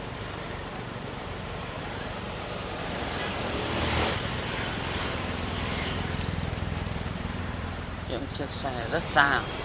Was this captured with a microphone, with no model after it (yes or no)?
no